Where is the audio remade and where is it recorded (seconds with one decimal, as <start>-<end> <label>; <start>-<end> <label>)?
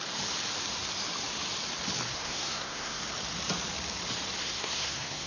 0.0-2.1 recorded; 2.1-3.0 remade; 3.0-4.4 recorded; 4.4-5.3 remade